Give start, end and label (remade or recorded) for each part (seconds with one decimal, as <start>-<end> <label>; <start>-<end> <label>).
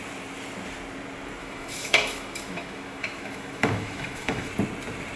0.0-1.4 recorded; 1.4-4.5 remade; 4.5-5.2 recorded